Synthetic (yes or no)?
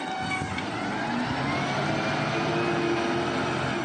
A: no